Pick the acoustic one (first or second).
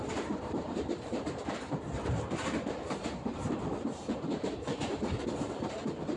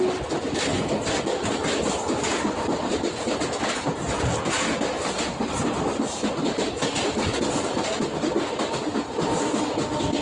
second